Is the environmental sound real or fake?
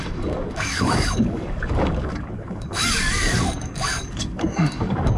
fake